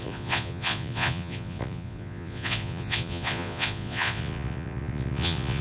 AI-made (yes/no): yes